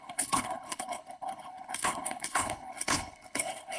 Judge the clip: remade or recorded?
remade